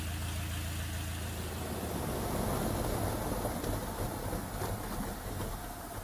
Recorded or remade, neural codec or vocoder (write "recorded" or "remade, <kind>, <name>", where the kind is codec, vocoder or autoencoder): recorded